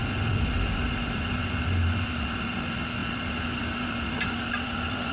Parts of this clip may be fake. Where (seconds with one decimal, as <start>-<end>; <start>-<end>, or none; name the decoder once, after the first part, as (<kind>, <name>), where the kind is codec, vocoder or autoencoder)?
none